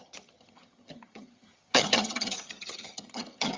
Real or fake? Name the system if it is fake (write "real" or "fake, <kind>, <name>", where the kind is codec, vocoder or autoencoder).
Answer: fake, vocoder, HiFi-GAN